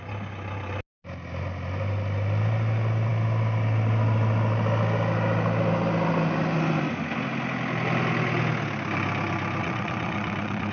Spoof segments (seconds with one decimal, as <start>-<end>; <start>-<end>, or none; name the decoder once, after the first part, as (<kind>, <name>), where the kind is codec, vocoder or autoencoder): 9.6-10.7 (vocoder, WaveNeXt)